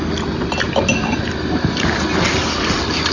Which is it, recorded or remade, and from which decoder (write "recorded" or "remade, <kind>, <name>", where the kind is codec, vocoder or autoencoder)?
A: recorded